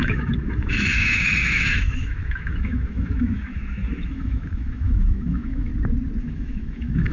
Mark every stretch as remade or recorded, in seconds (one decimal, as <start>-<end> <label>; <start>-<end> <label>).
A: 0.0-5.7 remade; 5.7-6.2 recorded; 6.2-7.1 remade